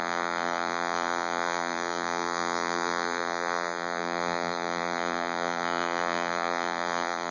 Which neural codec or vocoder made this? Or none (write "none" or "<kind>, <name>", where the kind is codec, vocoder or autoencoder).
vocoder, BigVGAN v2